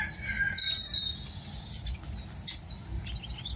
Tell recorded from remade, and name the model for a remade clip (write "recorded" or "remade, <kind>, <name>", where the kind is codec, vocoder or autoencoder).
recorded